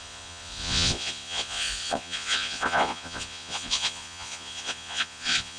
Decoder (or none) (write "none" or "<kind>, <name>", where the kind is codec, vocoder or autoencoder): vocoder, Vocos